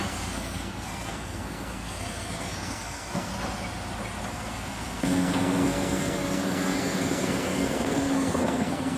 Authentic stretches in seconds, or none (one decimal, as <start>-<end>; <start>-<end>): 3.3-4.3